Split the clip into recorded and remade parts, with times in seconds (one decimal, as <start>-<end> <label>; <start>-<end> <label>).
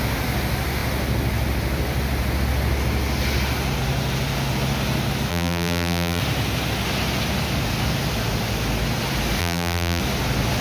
0.0-5.3 recorded; 5.3-6.2 remade; 6.2-9.4 recorded; 9.4-10.0 remade; 10.0-10.6 recorded